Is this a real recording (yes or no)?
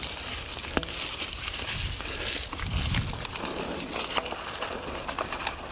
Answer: yes